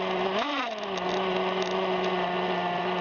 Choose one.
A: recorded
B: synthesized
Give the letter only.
A